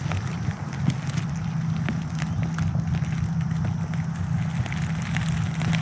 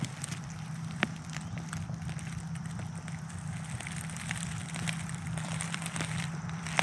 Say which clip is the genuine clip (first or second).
first